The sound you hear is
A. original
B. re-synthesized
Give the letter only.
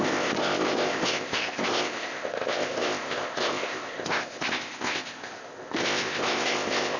B